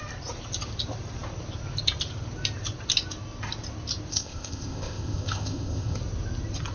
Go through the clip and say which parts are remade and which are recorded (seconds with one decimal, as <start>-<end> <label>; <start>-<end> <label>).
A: 0.0-4.1 recorded; 4.1-6.0 remade; 6.0-6.7 recorded